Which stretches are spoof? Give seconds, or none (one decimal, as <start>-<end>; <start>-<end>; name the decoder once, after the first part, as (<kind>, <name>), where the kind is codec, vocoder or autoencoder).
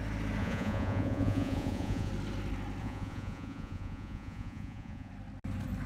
0.4-2.1 (vocoder, Vocos); 2.8-5.1